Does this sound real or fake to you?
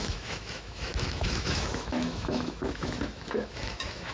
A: fake